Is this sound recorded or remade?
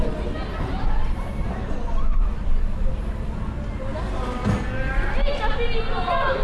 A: recorded